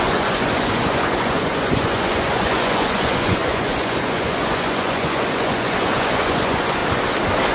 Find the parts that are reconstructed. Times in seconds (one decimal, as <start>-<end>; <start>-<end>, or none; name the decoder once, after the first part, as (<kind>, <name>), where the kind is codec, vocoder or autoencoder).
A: 0.0-6.8 (vocoder, Vocos)